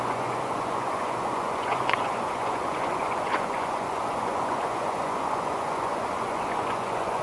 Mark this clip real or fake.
fake